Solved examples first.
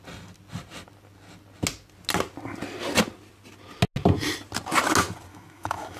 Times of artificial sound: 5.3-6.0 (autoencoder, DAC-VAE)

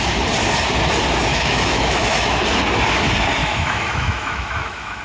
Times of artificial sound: 1.3-2.4 (autoencoder, DAC-VAE); 3.4-5.0

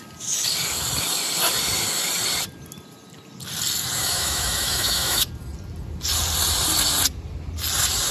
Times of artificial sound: 4.0-5.3 (autoencoder, DAC-VAE)

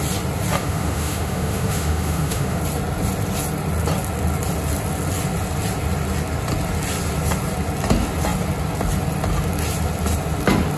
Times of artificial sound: 0.6-2.6 (autoencoder, DAC-VAE)

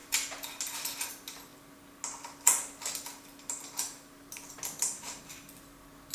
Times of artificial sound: none

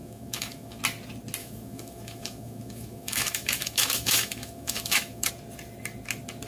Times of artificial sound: 0.0-0.8 (autoencoder, DAC-VAE); 1.4-5.3

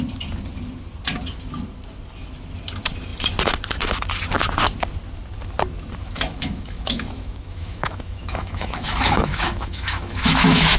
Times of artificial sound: 6.0-10.8 (autoencoder, DAC-VAE)

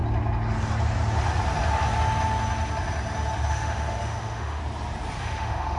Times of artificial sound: 3.5-4.6 (autoencoder, DAC-VAE); 5.2-5.8